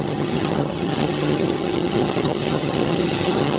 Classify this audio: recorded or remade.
remade